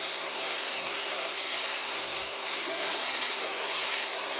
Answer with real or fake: fake